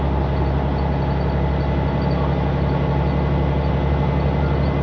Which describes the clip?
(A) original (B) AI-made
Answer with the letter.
A